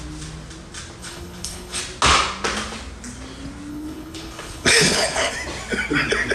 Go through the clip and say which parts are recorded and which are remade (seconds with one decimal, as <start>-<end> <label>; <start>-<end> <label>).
0.0-1.0 recorded; 1.0-1.8 remade; 1.8-3.7 recorded; 3.7-5.3 remade; 5.3-6.3 recorded